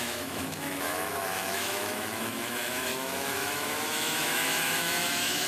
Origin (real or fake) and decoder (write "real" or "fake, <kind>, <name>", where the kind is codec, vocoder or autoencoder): fake, autoencoder, DAC-VAE